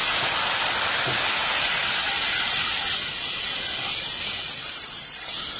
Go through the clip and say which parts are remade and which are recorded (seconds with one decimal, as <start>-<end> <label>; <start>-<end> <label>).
0.0-0.7 remade; 0.7-5.6 recorded